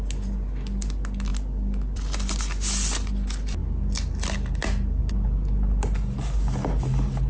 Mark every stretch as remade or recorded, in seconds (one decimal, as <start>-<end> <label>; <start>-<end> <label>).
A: 0.0-7.3 recorded